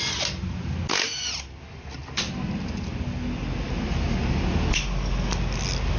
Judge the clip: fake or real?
real